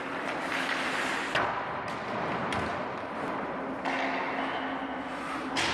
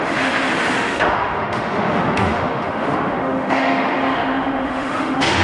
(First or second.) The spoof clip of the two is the second